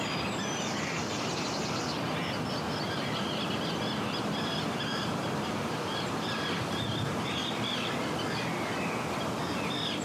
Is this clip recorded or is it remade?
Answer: recorded